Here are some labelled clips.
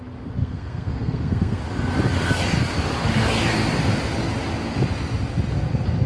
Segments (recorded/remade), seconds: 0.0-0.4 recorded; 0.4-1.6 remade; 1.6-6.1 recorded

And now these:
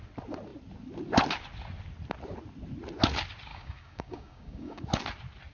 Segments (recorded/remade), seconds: 0.0-3.5 recorded; 3.5-4.8 remade; 4.8-5.5 recorded